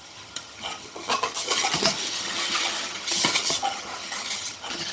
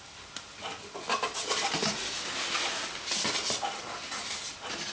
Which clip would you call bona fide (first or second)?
second